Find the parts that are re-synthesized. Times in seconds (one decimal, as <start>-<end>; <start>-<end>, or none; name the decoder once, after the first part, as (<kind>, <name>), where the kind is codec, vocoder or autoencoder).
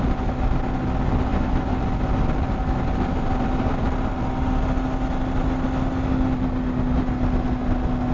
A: none